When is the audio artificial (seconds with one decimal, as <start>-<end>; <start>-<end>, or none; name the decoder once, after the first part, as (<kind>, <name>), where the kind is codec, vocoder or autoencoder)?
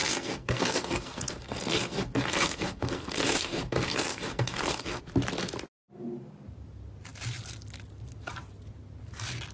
0.0-5.0 (codec, SNAC)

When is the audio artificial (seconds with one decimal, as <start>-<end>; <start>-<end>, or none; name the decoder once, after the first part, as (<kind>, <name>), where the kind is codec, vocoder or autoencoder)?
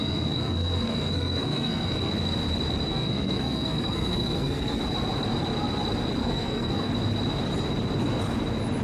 0.0-2.1 (codec, SNAC); 2.9-4.8; 6.2-6.9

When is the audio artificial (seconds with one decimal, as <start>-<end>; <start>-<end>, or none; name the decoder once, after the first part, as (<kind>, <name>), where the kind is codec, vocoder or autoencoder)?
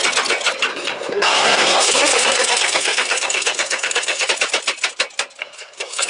0.7-4.3 (codec, SNAC); 5.4-6.1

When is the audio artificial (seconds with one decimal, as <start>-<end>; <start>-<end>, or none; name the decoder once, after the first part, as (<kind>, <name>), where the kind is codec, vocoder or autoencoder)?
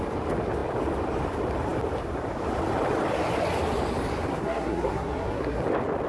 4.3-5.6 (codec, SNAC)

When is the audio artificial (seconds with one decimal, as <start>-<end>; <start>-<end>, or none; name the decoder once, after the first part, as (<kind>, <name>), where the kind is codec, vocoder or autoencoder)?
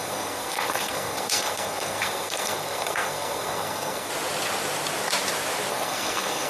0.0-4.1 (codec, SNAC); 5.7-6.5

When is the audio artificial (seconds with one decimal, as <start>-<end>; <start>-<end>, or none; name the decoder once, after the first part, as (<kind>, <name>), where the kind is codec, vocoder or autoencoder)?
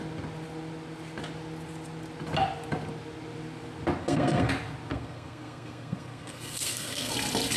4.0-4.5 (codec, SNAC); 4.9-7.1